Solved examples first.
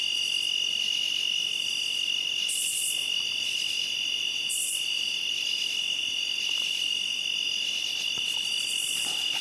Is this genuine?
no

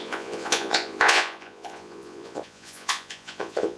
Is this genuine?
no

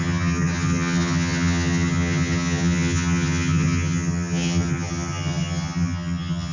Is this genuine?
no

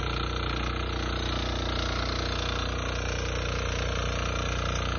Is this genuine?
yes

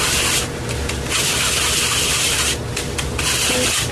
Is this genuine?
yes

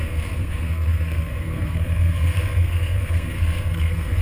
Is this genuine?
no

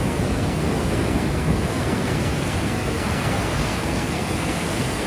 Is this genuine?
no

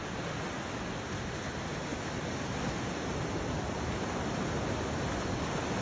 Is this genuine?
yes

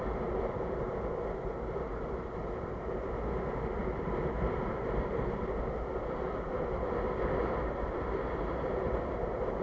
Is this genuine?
yes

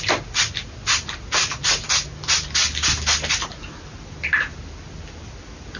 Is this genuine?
yes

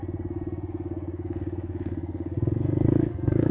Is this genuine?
no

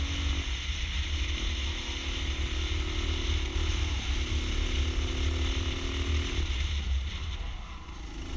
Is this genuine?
yes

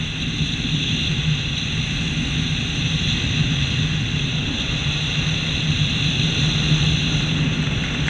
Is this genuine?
yes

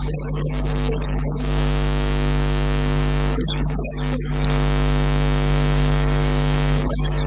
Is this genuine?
no